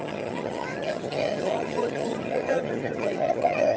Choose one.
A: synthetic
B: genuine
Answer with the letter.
A